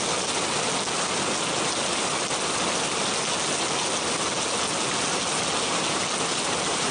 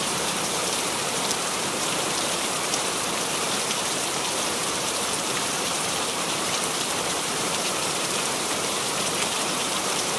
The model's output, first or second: second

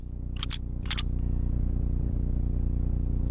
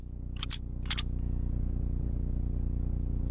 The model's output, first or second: first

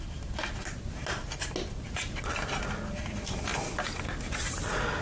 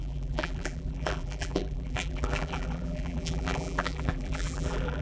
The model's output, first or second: second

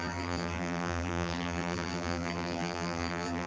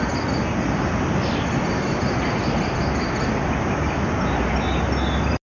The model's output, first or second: first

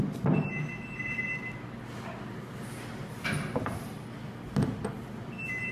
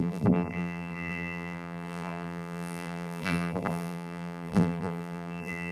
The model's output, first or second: second